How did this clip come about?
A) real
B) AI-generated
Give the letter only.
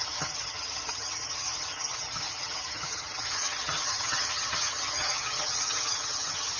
B